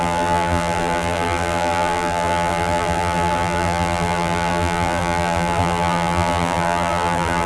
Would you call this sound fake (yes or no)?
yes